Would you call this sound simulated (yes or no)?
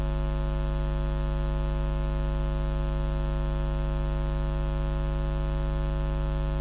no